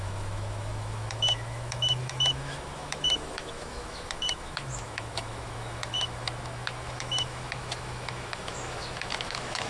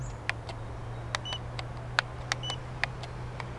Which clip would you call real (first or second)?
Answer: second